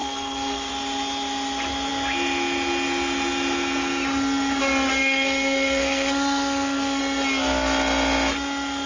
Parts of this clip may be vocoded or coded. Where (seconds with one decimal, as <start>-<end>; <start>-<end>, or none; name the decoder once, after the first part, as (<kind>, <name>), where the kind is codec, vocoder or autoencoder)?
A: 0.0-0.7 (codec, SNAC); 5.0-7.0